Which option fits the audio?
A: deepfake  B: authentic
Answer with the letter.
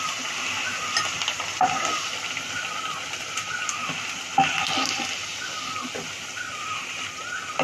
B